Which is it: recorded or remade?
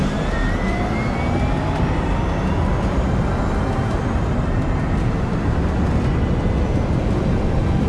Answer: recorded